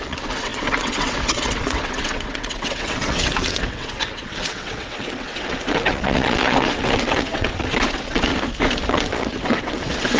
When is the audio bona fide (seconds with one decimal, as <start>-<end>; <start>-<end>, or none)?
8.3-8.9

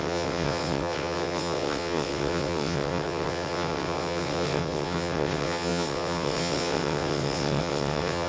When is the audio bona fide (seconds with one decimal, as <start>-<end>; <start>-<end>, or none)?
none

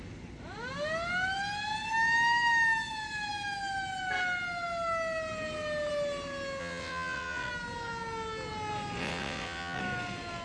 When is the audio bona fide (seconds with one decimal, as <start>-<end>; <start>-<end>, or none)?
0.0-6.6; 7.5-9.0; 9.8-10.4